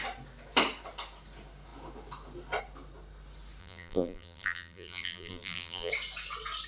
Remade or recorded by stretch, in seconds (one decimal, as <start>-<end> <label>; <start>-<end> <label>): 0.0-3.6 recorded; 3.6-5.9 remade; 5.9-6.7 recorded